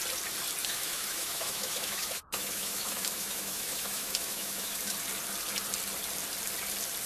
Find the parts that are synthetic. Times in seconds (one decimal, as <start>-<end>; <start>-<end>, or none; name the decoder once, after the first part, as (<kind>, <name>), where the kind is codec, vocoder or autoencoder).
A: 0.6-4.9 (autoencoder, DAC-VAE)